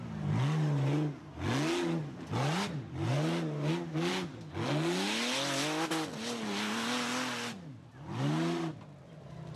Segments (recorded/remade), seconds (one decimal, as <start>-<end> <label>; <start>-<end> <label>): 0.0-9.6 recorded